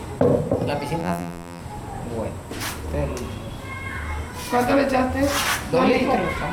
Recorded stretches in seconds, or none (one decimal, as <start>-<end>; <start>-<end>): 0.0-1.0; 1.6-6.5